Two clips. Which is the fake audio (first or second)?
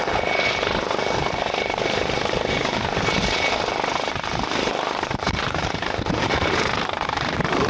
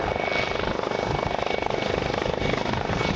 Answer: first